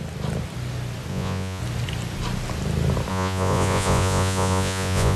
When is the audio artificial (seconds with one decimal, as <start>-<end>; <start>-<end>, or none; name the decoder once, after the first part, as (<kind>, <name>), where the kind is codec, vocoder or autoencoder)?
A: 1.1-1.6 (vocoder, Vocos); 3.1-5.2